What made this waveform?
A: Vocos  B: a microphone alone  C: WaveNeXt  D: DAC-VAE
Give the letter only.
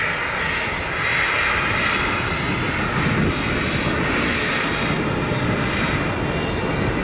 B